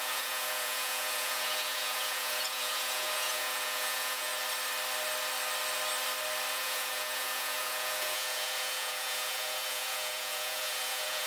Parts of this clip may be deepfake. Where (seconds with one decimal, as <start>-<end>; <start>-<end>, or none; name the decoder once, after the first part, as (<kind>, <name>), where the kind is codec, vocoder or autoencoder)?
0.0-4.3 (vocoder, Vocos); 6.5-11.3